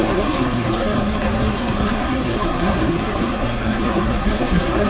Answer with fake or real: fake